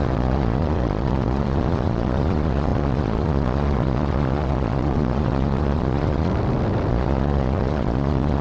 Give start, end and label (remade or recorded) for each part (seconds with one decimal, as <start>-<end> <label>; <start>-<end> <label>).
0.0-6.3 remade; 6.3-6.9 recorded; 6.9-8.4 remade